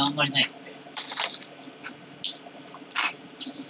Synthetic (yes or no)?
no